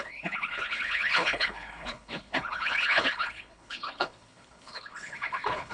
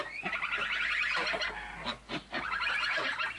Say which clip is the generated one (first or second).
first